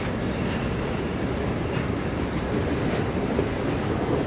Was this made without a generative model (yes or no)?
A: yes